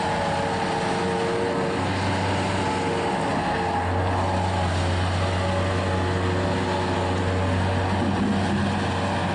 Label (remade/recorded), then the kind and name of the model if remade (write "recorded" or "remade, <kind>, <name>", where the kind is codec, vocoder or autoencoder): recorded